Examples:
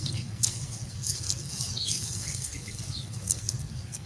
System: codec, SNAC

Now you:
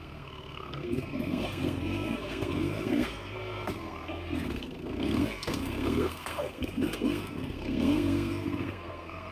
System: codec, SNAC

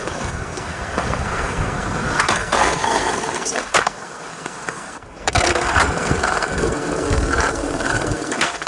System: codec, SNAC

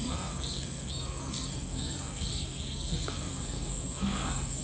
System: codec, SNAC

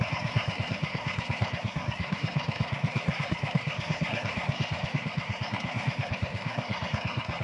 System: codec, SNAC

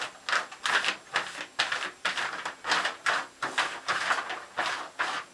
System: none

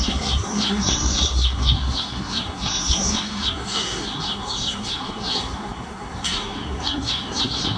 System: codec, SNAC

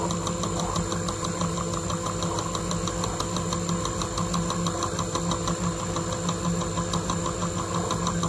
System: none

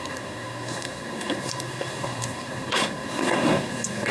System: codec, SNAC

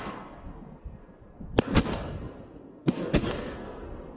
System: codec, SNAC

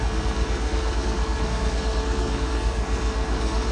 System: codec, SNAC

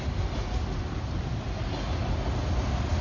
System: none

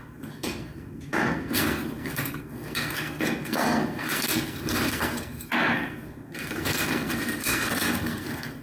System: codec, SNAC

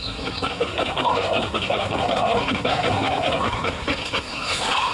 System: codec, SNAC